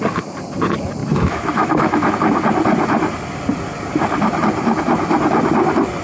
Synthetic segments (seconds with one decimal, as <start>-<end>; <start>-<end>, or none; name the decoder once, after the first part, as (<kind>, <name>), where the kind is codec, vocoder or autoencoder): 1.0-2.1 (autoencoder, DAC-VAE)